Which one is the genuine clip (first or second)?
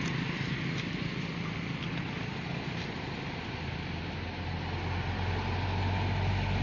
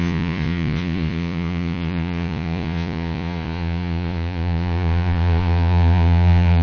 first